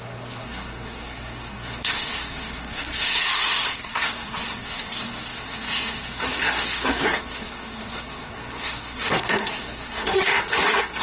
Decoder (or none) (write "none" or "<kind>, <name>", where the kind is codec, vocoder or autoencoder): codec, SNAC